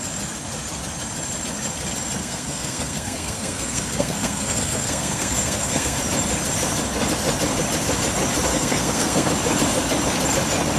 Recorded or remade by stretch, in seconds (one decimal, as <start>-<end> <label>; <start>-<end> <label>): 0.0-2.2 recorded; 2.2-6.0 remade; 6.0-8.5 recorded; 8.5-9.3 remade; 9.3-10.8 recorded